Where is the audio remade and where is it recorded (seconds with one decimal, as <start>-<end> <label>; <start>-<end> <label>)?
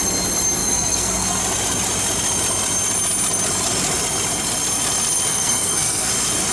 0.0-0.6 recorded; 0.6-1.4 remade; 1.4-5.3 recorded; 5.3-6.1 remade; 6.1-6.5 recorded